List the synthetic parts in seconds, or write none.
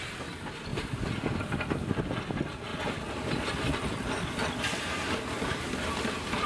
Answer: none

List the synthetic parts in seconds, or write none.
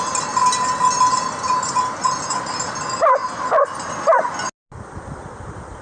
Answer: 0.4-2.4 (vocoder, BigVGAN v2)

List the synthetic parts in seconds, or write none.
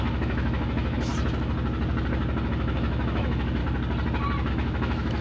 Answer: 0.0-1.1 (autoencoder, DAC-VAE); 2.5-3.6; 4.5-5.2